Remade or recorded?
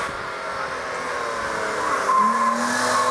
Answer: recorded